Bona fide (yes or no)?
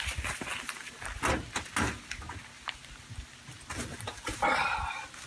yes